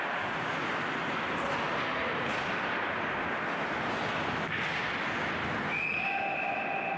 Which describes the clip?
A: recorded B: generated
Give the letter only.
A